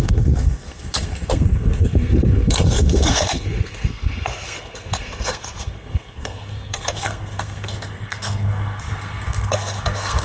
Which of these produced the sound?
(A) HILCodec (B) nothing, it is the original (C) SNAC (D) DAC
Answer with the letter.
C